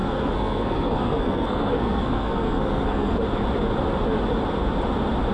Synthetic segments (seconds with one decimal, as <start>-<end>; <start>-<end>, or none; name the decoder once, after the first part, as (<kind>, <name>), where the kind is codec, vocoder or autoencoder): 0.0-3.2 (codec, SNAC)

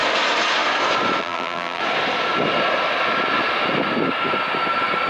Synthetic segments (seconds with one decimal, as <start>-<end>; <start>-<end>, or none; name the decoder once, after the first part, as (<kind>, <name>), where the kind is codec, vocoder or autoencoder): 1.2-1.8 (vocoder, BigVGAN v2)

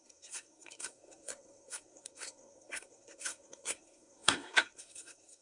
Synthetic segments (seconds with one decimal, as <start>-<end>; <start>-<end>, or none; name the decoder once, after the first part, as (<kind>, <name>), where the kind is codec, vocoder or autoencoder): 0.0-5.4 (codec, SNAC)

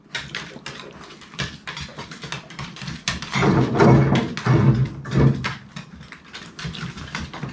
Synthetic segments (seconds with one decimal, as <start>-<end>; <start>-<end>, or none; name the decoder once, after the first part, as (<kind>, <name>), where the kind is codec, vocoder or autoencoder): none

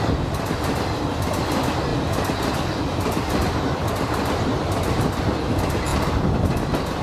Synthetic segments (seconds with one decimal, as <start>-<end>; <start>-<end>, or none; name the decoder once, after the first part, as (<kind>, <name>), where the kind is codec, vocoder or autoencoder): none

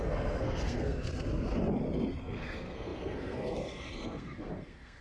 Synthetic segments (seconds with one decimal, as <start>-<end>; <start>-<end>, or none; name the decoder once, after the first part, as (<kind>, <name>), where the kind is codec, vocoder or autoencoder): 0.0-1.1 (codec, SNAC); 2.2-5.0

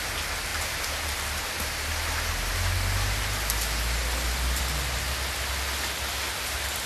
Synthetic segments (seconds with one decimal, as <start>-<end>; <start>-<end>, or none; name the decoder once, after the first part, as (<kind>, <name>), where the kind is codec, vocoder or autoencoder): none